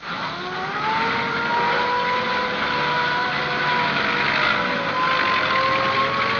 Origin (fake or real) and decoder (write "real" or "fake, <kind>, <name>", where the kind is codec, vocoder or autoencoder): real